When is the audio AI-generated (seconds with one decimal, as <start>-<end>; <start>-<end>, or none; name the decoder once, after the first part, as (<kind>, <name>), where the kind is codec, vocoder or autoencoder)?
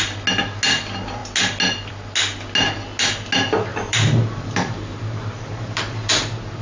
3.7-6.1 (vocoder, BigVGAN v2)